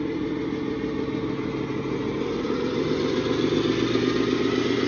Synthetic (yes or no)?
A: no